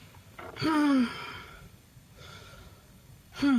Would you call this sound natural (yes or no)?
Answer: no